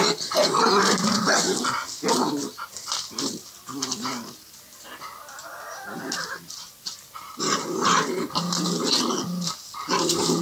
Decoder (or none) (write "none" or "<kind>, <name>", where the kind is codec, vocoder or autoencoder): none